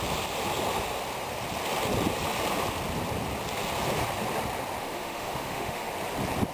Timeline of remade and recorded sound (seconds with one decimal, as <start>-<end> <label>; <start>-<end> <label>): 0.0-4.8 recorded; 4.8-5.9 remade; 5.9-6.5 recorded